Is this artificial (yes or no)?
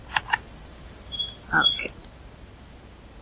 yes